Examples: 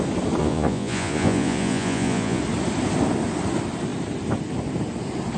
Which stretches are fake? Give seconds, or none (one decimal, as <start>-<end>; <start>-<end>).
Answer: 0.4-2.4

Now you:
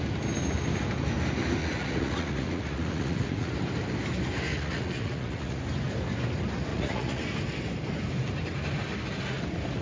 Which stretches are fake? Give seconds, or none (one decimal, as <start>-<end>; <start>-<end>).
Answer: 1.6-3.5; 4.5-5.6; 6.7-7.2

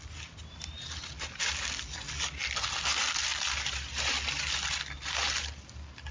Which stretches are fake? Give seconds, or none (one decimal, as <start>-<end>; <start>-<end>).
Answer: none

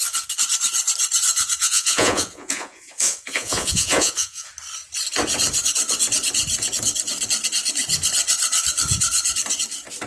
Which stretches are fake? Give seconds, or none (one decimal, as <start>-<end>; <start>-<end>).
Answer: 1.6-4.5